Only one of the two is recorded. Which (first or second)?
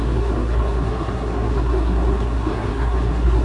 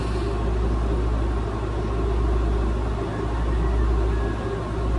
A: second